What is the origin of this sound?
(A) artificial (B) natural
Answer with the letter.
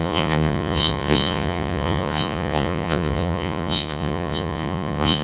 A